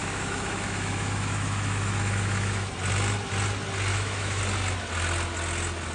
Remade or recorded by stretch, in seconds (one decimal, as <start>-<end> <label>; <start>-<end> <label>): 0.0-2.7 remade; 2.7-3.9 recorded; 3.9-4.4 remade; 4.4-5.9 recorded